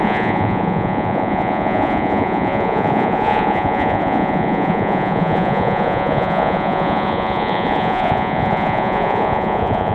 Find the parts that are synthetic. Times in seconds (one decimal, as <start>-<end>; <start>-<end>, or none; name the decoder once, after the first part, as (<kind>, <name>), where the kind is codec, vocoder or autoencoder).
0.0-9.9 (vocoder, Vocos)